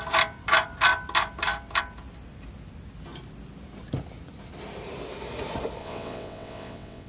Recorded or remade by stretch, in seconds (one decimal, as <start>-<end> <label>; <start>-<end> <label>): 0.0-5.8 recorded; 5.8-7.1 remade